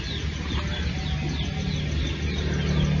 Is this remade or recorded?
recorded